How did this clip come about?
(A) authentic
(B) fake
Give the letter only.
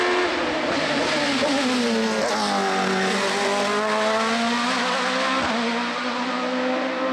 A